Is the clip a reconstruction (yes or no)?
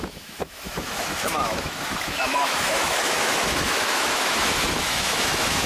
yes